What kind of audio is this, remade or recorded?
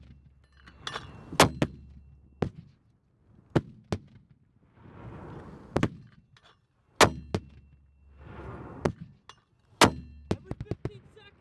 recorded